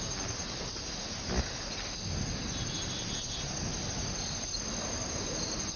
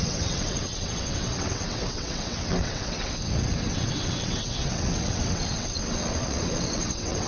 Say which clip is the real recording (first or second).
first